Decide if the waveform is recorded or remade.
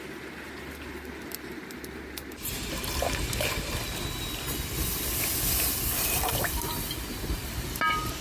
recorded